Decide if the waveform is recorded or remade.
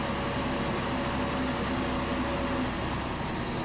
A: recorded